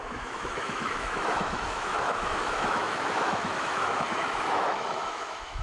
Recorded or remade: remade